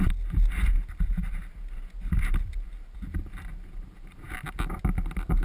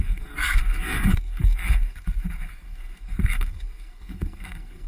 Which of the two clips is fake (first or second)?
second